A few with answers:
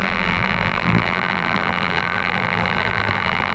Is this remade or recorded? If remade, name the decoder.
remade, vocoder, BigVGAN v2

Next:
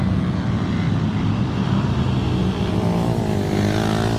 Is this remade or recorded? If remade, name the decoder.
recorded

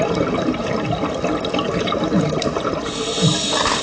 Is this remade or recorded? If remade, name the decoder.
recorded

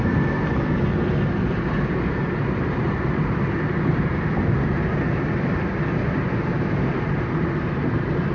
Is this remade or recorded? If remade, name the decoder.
recorded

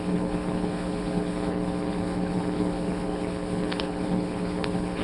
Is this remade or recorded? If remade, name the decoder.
remade, codec, HILCodec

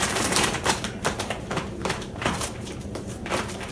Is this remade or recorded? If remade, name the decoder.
remade, vocoder, BigVGAN v2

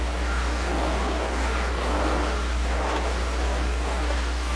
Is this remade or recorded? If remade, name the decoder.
remade, codec, DAC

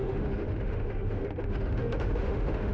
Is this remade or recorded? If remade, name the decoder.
remade, autoencoder, DAC-VAE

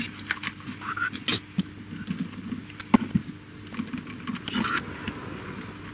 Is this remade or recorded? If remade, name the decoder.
recorded